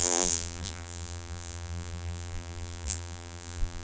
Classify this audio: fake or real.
fake